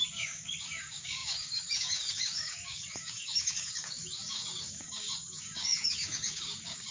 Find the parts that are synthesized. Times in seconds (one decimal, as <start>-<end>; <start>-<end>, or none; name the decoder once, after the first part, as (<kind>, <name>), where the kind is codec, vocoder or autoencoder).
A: 0.0-6.9 (codec, DAC)